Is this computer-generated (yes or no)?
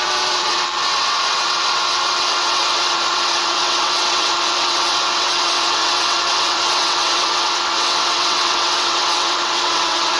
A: yes